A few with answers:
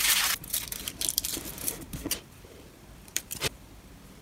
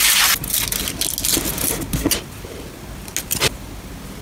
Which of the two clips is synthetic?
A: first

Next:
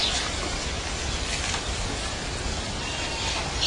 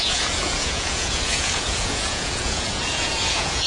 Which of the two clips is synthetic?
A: second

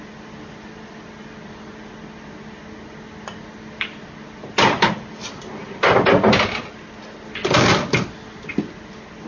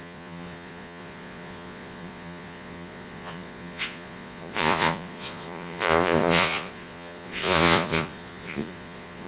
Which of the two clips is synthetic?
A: second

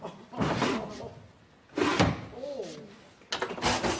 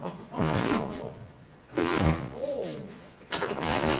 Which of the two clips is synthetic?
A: second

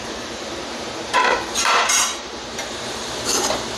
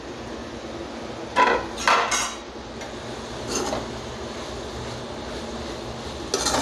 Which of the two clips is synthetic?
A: first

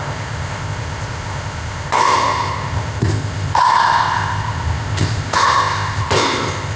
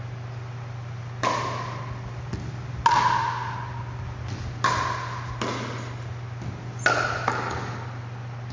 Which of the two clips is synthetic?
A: first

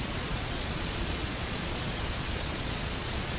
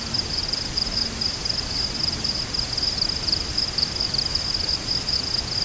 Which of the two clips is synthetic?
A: first